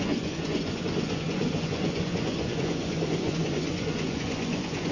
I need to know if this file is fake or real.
fake